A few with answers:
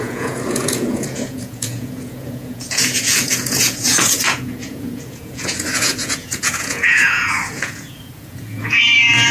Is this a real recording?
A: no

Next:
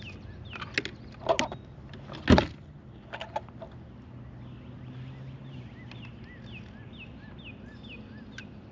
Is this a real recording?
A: yes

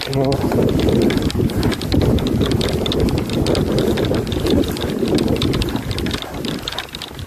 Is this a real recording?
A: yes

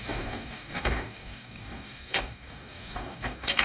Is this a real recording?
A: no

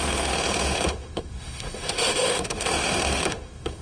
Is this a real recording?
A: no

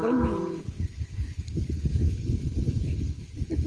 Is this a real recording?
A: no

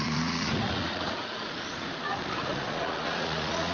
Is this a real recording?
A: no